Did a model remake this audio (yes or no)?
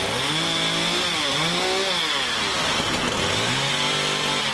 no